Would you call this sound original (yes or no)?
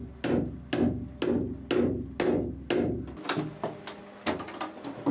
yes